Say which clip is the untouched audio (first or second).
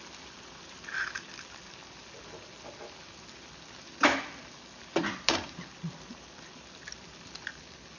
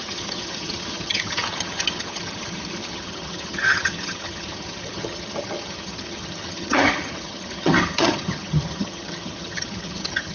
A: first